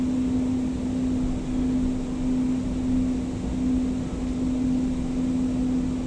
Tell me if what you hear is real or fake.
real